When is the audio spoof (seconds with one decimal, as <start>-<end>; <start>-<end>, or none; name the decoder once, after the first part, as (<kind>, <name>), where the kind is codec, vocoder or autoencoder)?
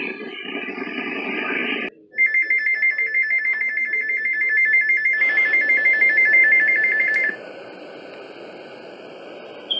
0.0-1.6 (vocoder, BigVGAN v2); 3.4-9.8